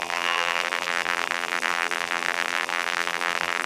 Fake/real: fake